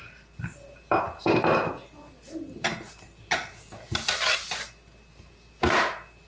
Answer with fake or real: real